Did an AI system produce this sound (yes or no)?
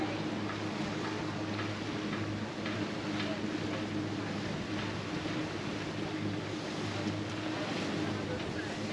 no